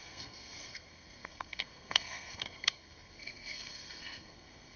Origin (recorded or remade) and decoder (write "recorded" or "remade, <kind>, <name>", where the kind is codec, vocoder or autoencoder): remade, codec, SNAC